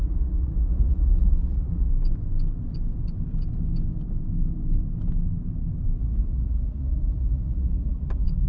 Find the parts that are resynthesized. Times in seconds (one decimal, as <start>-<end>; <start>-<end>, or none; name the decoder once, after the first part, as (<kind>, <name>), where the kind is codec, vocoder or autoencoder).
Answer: 0.0-1.9 (vocoder, Vocos); 6.0-8.5

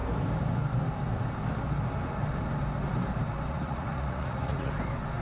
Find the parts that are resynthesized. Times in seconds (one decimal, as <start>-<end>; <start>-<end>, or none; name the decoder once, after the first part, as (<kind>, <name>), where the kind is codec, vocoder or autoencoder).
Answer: 3.5-4.7 (vocoder, Vocos)

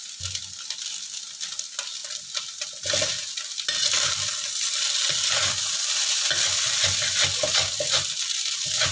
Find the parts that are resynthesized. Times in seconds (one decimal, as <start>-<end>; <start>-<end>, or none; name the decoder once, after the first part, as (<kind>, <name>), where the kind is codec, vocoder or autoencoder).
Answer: none

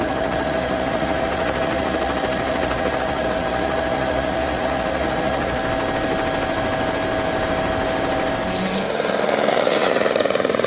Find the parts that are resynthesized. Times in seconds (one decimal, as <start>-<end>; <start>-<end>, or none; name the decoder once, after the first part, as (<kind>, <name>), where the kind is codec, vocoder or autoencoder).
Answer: 0.0-5.6 (vocoder, Vocos); 9.5-10.7

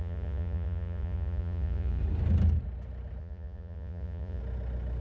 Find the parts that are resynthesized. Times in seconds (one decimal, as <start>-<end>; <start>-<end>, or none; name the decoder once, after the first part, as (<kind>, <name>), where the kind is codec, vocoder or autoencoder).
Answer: 0.0-2.0 (vocoder, Vocos); 3.2-4.4

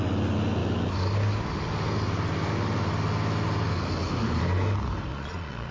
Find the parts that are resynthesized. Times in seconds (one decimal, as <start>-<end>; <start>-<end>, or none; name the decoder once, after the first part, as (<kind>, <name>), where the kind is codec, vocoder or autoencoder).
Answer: 5.1-5.7 (vocoder, Vocos)

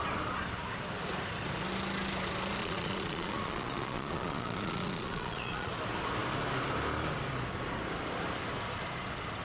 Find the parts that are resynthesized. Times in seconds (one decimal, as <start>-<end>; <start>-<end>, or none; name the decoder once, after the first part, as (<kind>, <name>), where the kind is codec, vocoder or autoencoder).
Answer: 2.6-5.7 (vocoder, Vocos)